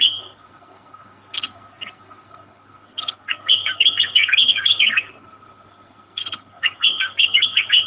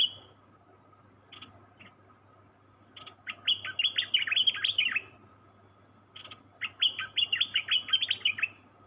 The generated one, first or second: first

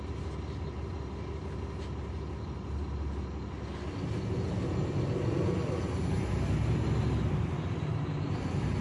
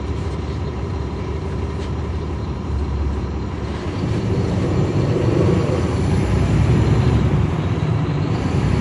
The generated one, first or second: second